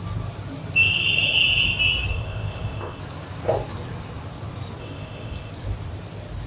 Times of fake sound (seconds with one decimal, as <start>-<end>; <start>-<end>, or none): 2.1-3.0; 4.8-5.5